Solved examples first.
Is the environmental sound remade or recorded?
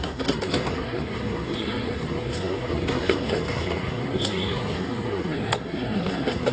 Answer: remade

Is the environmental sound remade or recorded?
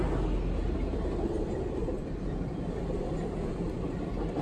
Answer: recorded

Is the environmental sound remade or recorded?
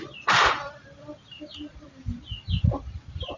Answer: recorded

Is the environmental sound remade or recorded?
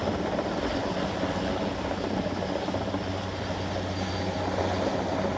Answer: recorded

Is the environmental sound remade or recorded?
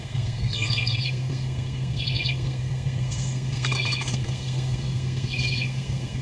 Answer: remade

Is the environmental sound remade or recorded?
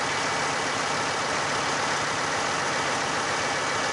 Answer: recorded